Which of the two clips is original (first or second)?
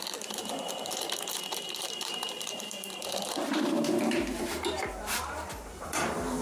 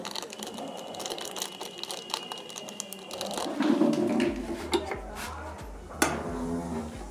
second